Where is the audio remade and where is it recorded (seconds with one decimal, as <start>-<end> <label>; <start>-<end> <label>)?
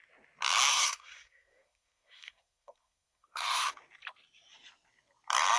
0.0-0.7 recorded; 0.7-3.7 remade; 3.7-5.6 recorded